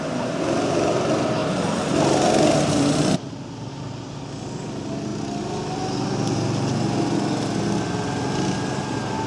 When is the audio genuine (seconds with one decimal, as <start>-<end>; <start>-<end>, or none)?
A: 0.0-9.3